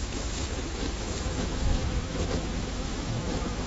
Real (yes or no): no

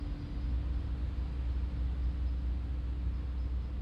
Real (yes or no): yes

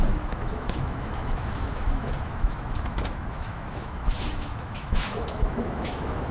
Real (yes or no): no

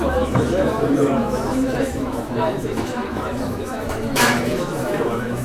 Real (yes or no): no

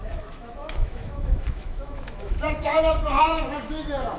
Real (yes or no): no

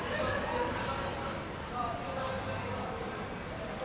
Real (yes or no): yes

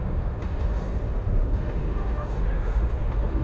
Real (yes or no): no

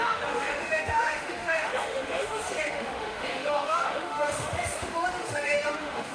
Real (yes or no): no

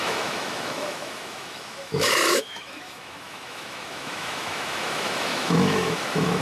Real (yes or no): no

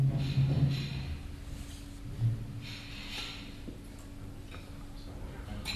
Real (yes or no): yes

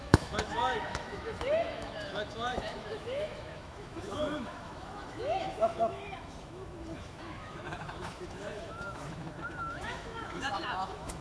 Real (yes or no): no